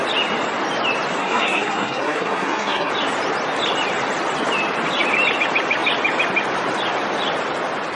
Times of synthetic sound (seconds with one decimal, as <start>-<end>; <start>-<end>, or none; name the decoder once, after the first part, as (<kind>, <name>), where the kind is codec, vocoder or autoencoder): 1.2-2.9 (codec, SNAC)